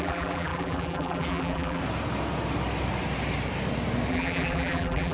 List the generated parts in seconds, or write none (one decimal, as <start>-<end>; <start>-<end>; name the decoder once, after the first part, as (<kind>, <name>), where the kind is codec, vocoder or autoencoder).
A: 0.0-1.8 (vocoder, BigVGAN v2); 4.1-5.1